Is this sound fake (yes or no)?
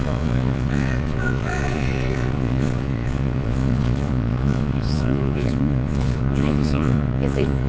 yes